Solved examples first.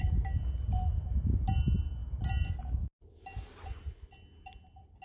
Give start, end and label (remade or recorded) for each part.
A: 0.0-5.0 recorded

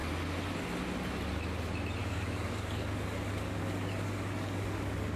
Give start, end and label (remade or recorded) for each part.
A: 0.0-2.0 recorded; 2.0-5.2 remade

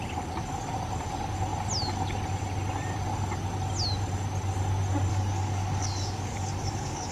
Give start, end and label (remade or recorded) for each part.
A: 0.0-5.1 recorded; 5.1-7.1 remade

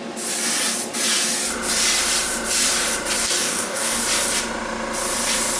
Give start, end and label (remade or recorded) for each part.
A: 0.0-3.2 recorded; 3.2-4.0 remade; 4.0-5.6 recorded